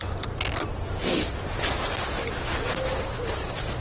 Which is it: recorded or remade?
recorded